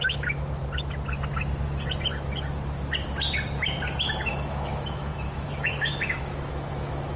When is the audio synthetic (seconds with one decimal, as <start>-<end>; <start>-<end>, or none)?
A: 0.0-0.6; 4.3-7.2